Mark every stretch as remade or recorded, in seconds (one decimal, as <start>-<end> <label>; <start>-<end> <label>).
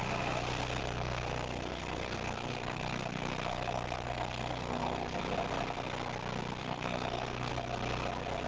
0.0-0.8 recorded; 0.8-5.2 remade; 5.2-6.6 recorded; 6.6-7.5 remade; 7.5-8.5 recorded